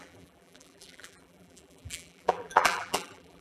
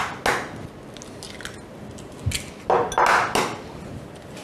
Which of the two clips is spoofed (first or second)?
first